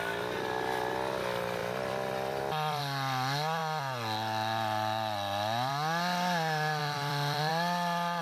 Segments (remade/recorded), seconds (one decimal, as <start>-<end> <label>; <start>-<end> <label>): 0.0-1.6 recorded; 1.6-2.8 remade; 2.8-6.8 recorded; 6.8-7.5 remade; 7.5-8.2 recorded